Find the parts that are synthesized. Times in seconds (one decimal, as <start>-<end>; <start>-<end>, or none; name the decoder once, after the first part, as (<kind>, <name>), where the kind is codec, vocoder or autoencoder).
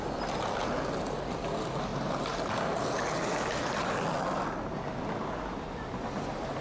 none